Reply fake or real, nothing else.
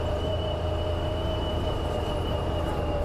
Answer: fake